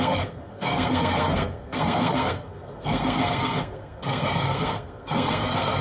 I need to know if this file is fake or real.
fake